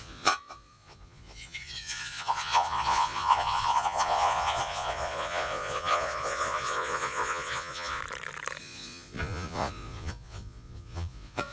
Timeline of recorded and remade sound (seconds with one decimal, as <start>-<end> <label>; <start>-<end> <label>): 0.0-8.0 remade; 8.0-8.6 recorded; 8.6-11.5 remade